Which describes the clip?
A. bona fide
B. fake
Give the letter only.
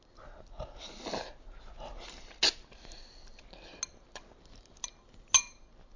A